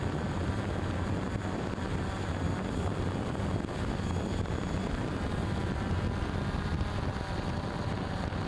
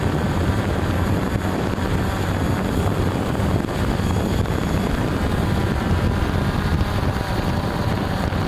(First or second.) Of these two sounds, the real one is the first